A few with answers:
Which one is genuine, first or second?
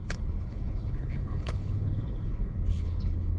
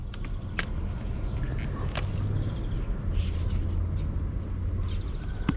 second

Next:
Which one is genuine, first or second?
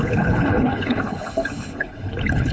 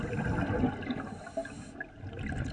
second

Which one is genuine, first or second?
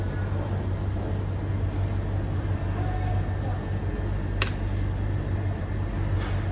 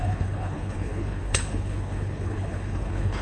first